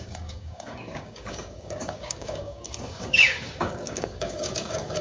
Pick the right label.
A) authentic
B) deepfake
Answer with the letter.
B